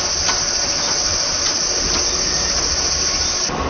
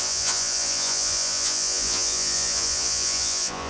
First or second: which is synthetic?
second